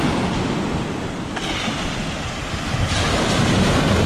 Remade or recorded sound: recorded